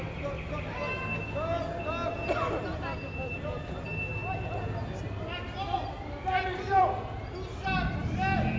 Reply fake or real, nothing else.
real